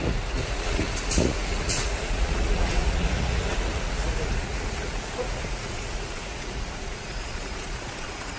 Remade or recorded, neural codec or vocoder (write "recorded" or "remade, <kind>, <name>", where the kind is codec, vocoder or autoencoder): remade, vocoder, Vocos